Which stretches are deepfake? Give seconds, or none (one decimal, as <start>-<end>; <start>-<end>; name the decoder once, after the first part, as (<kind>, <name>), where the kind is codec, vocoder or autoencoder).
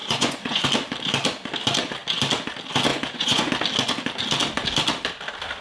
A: 0.0-0.6 (vocoder, Vocos); 2.9-3.5